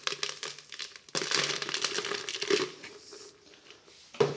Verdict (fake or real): real